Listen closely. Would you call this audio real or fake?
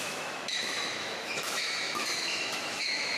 fake